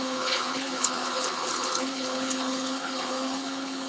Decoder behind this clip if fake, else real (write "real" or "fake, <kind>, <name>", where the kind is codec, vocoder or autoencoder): fake, codec, HILCodec